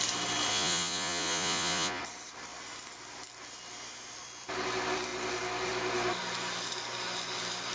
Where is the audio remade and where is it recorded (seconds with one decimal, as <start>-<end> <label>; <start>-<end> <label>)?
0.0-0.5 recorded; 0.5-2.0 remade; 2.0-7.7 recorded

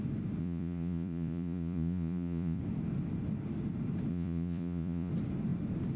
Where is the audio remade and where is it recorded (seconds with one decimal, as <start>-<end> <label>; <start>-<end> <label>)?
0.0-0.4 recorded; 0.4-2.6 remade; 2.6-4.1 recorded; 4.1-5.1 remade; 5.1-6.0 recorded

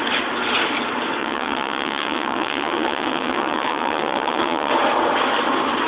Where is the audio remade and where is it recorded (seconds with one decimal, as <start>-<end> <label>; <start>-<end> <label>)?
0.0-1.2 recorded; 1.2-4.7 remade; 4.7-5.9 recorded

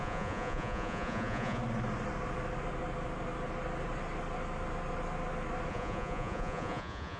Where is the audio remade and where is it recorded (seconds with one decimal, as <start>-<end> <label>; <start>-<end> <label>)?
0.0-1.6 remade; 1.6-5.7 recorded; 5.7-7.2 remade

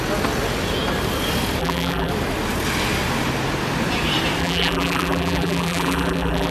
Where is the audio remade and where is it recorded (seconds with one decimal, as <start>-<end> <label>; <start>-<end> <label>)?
0.0-1.6 recorded; 1.6-2.1 remade; 2.1-4.4 recorded; 4.4-6.5 remade